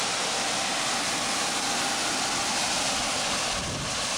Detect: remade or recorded recorded